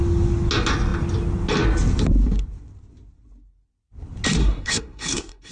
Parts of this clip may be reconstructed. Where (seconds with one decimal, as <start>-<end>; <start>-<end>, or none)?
4.4-5.5